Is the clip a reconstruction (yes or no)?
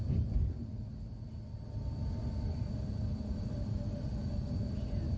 no